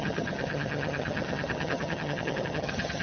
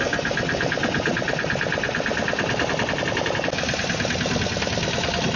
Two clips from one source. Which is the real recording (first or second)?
second